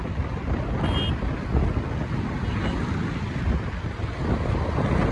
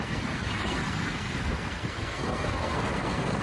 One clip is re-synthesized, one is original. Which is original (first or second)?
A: first